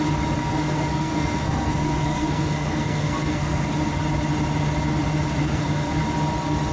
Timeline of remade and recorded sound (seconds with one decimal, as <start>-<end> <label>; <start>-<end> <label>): 0.0-0.4 recorded; 0.4-3.7 remade; 3.7-5.4 recorded; 5.4-6.0 remade; 6.0-6.7 recorded